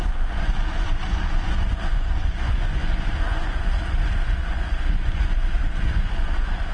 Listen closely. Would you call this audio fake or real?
fake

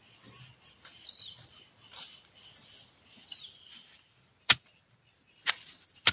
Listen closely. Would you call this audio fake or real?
fake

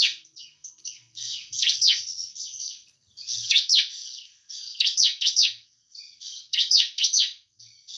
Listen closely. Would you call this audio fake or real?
fake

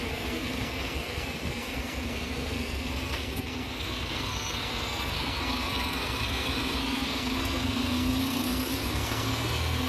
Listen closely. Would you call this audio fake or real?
fake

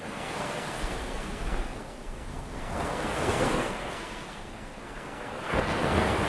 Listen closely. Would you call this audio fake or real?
fake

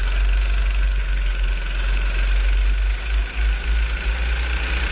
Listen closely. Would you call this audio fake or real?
real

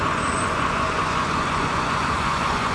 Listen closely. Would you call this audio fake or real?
fake